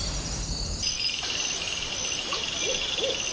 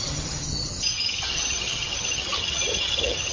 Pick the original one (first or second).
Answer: first